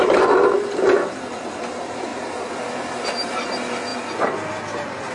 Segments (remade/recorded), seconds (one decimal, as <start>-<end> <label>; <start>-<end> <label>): 0.0-5.1 recorded